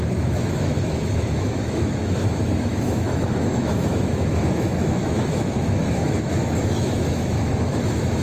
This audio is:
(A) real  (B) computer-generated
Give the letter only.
B